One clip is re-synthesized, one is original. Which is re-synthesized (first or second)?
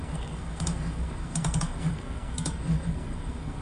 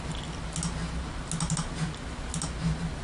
first